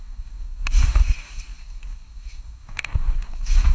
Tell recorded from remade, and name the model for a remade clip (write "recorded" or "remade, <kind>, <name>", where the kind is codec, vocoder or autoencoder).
remade, codec, DAC